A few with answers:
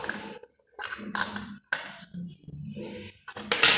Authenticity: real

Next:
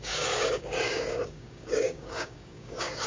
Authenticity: fake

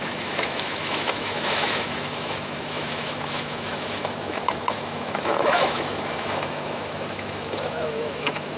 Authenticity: fake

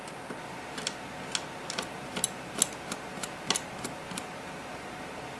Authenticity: real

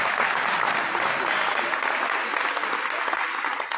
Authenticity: real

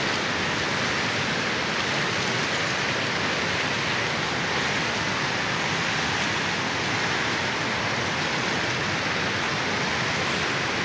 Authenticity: real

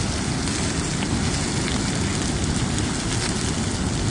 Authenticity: real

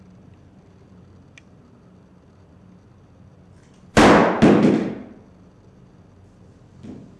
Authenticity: real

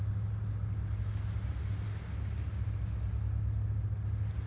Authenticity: real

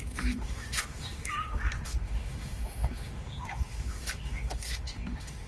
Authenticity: fake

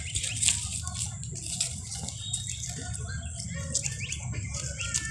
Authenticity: real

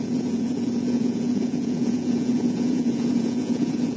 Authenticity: fake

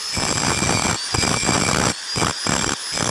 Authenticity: real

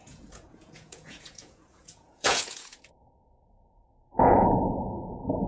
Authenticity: fake